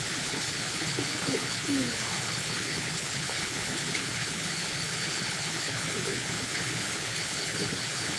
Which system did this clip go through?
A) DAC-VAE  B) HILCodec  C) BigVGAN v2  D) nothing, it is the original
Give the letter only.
B